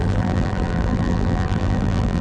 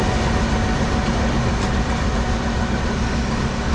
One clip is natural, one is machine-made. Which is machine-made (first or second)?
first